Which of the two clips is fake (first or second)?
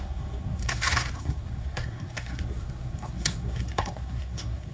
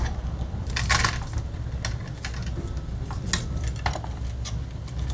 first